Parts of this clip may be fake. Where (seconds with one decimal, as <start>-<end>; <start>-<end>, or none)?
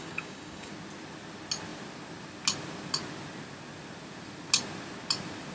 0.0-0.7